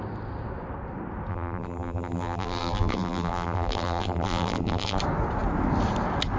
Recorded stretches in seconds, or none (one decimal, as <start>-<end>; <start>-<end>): 0.0-1.3; 5.0-6.4